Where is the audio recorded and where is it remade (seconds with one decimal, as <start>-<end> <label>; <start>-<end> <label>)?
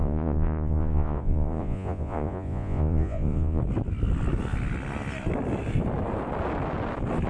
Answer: 0.0-3.6 remade; 3.6-7.3 recorded